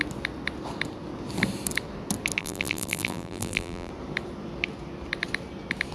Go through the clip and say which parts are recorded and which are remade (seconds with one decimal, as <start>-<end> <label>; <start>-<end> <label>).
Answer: 0.0-2.4 recorded; 2.4-3.9 remade; 3.9-5.9 recorded